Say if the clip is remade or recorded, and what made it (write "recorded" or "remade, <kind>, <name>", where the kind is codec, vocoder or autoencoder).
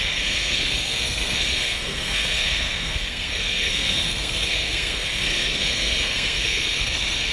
remade, codec, SNAC